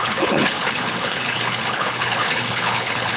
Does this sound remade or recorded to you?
remade